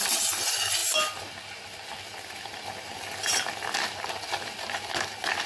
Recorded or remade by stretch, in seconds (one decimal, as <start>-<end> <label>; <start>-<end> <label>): 0.0-5.5 recorded